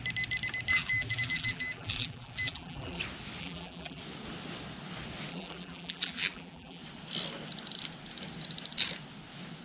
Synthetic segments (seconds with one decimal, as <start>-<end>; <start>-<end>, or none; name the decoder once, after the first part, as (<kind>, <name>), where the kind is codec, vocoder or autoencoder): 0.7-3.0 (vocoder, BigVGAN v2); 3.4-4.0; 5.3-6.8